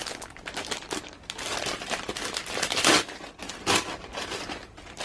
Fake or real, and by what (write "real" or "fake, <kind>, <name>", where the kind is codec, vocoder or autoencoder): real